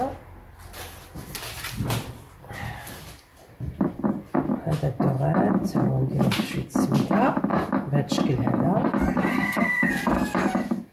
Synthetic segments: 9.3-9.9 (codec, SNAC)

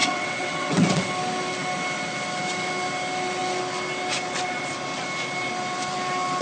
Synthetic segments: 0.0-1.1 (vocoder, WaveNeXt)

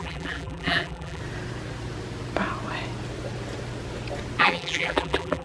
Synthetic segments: 0.0-1.2 (vocoder, BigVGAN v2); 4.4-5.4